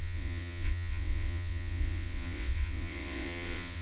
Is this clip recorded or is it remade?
remade